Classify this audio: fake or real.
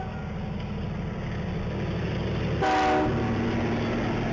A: real